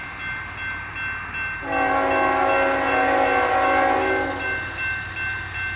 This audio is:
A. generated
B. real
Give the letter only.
B